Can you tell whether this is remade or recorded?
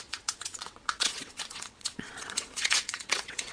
remade